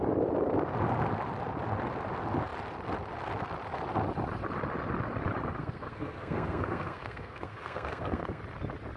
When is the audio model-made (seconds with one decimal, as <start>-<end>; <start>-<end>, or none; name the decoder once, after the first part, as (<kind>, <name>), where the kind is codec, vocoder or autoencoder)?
5.6-8.4 (codec, SNAC)